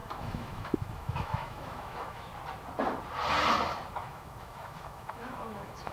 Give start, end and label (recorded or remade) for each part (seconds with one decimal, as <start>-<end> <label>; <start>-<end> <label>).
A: 0.0-2.3 remade; 2.3-3.9 recorded; 3.9-5.9 remade